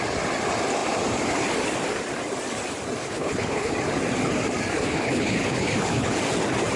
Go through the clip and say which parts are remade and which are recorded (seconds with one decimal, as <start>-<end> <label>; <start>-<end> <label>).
0.0-3.0 recorded; 3.0-3.7 remade; 3.7-4.7 recorded; 4.7-6.1 remade; 6.1-6.8 recorded